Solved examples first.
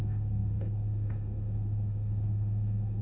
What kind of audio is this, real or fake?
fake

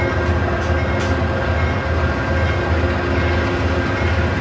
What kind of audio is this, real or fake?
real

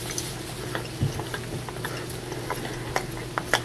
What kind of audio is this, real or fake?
real